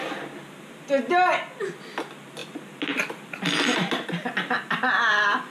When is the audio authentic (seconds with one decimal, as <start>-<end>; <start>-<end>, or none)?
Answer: 0.0-5.5